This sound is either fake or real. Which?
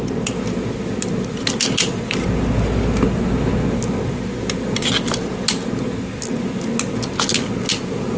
real